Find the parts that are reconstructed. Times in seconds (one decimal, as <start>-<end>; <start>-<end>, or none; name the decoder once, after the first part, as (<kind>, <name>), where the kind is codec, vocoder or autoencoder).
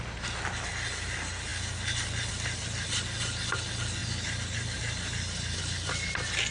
none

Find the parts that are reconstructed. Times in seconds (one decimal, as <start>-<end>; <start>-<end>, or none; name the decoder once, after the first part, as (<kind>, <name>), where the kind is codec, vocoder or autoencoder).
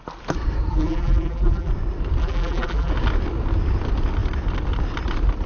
0.7-1.7 (vocoder, BigVGAN v2); 2.2-2.9